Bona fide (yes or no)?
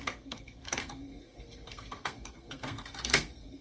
no